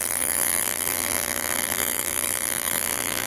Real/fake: fake